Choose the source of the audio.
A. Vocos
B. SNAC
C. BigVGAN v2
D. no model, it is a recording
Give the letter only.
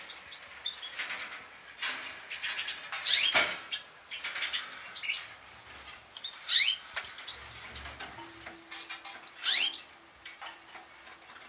D